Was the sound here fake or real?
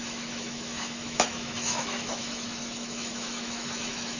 fake